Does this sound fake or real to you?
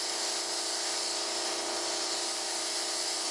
real